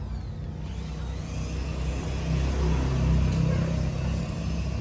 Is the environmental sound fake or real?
real